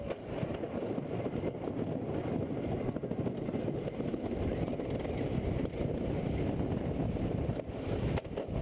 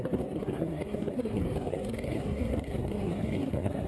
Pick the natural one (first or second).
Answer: first